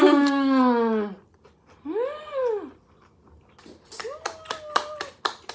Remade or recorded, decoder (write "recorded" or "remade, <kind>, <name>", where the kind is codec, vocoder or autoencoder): recorded